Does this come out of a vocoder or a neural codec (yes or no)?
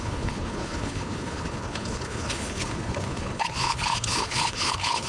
yes